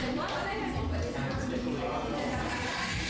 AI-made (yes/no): no